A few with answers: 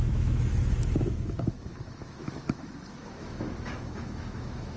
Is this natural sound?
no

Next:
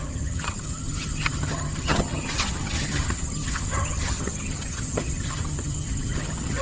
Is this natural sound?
no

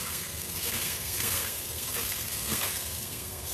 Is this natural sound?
no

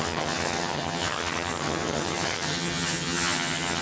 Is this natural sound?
no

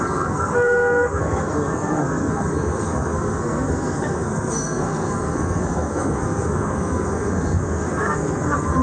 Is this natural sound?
no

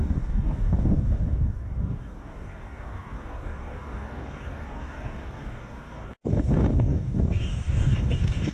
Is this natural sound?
no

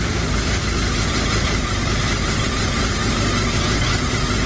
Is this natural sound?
yes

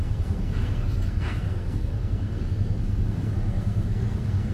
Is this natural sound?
no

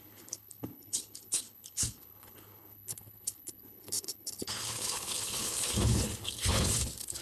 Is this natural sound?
no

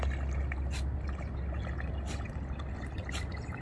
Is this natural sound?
yes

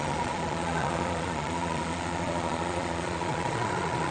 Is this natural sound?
no